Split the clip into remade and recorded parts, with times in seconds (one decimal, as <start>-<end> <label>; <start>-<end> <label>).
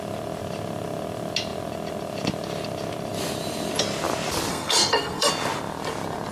0.0-4.5 recorded; 4.5-5.3 remade; 5.3-6.3 recorded